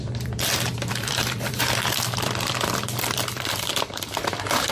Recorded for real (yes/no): no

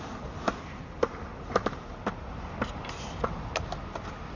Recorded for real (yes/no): yes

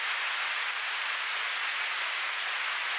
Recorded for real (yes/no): no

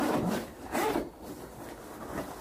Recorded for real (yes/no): no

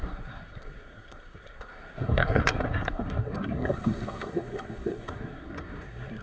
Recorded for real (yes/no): no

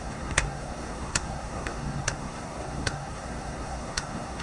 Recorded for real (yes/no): no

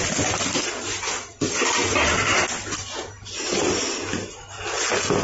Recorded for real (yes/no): yes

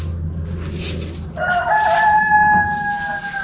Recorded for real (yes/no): yes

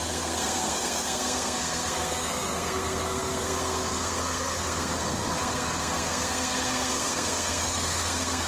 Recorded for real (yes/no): no